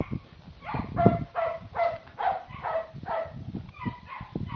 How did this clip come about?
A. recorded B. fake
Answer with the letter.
A